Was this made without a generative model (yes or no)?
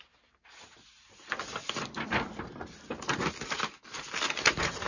yes